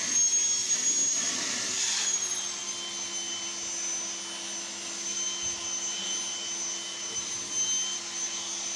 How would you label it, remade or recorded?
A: recorded